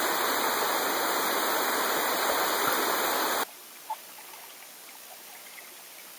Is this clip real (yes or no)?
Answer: yes